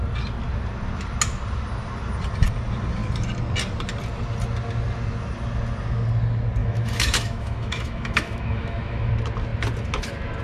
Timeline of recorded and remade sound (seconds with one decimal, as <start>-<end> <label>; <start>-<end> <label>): 0.0-6.6 recorded; 6.6-9.1 remade; 9.1-10.4 recorded